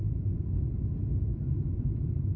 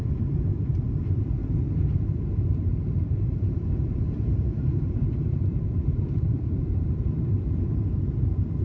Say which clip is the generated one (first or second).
second